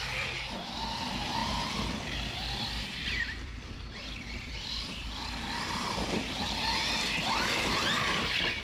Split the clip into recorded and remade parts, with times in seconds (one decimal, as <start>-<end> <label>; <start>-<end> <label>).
0.0-1.4 recorded; 1.4-6.6 remade; 6.6-8.6 recorded